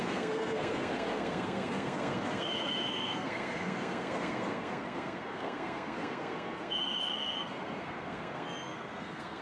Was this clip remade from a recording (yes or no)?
yes